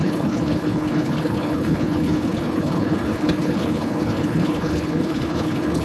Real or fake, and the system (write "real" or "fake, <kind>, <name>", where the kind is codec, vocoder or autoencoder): fake, codec, HILCodec